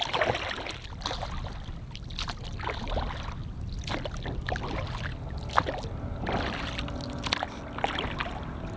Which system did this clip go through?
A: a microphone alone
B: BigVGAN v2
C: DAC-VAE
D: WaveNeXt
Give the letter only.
A